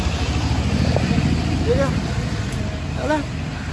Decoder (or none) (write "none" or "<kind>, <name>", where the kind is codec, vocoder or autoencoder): none